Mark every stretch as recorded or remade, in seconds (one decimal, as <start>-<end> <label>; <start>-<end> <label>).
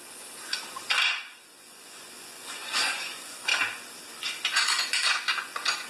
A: 0.0-3.5 remade; 3.5-4.1 recorded; 4.1-5.9 remade